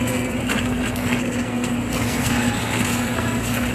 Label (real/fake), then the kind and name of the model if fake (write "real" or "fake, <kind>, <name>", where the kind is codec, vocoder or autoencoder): fake, codec, SNAC